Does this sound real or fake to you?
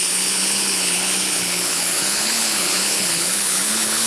fake